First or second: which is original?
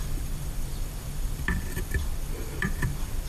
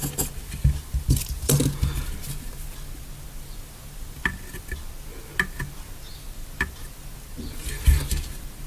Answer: second